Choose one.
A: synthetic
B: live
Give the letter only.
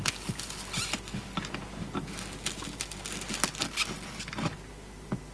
B